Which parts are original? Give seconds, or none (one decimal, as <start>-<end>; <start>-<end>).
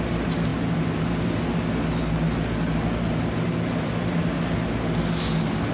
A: 0.0-5.7